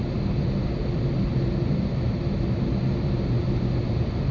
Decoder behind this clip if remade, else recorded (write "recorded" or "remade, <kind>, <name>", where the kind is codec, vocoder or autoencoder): recorded